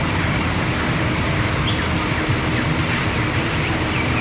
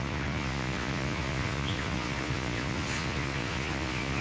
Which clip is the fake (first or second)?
second